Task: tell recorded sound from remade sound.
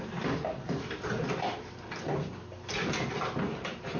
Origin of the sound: recorded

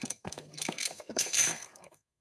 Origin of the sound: remade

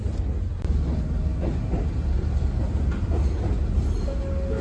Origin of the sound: recorded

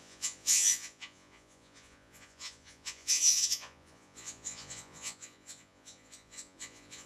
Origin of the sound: remade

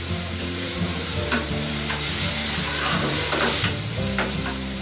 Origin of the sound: remade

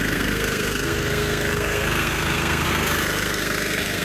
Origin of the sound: remade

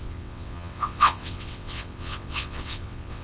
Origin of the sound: remade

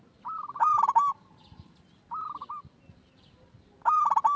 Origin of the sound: recorded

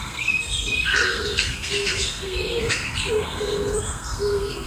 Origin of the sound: remade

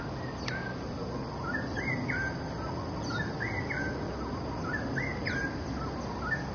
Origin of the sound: recorded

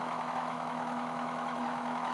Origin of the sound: remade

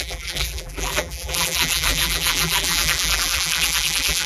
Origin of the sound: remade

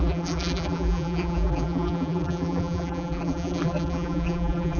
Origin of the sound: remade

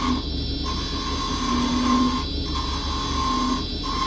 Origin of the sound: recorded